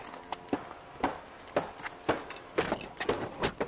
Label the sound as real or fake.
real